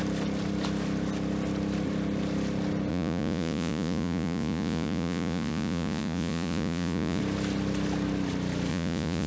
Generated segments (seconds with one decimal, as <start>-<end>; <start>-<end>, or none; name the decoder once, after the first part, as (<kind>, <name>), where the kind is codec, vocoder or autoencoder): 2.9-7.2 (vocoder, Vocos); 8.7-9.3